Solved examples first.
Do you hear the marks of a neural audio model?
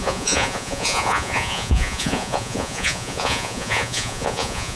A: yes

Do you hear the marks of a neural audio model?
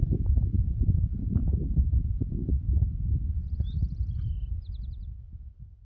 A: no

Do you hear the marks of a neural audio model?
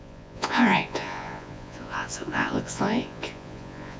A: yes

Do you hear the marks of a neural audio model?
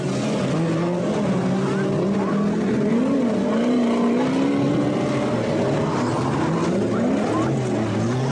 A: no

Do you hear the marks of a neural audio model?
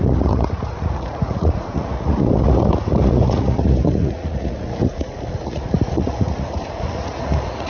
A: yes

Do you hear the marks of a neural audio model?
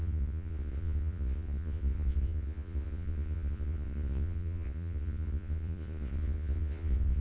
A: yes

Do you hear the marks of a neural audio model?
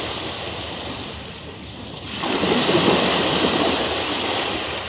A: no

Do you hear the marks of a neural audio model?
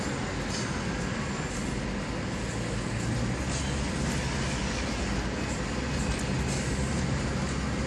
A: no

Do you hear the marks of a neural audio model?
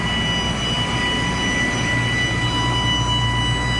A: no